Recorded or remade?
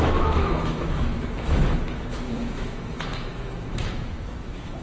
remade